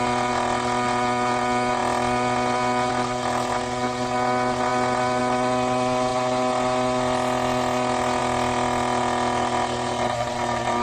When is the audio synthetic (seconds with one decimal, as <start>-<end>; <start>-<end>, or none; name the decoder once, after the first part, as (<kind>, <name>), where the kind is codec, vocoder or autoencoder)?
none